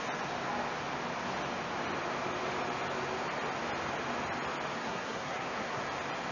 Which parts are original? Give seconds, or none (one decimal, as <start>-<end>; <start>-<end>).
0.0-4.8; 5.8-6.3